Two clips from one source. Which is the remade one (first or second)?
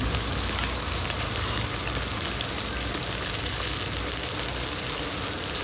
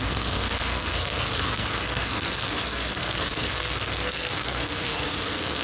second